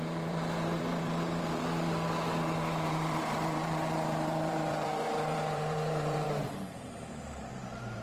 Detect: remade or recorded remade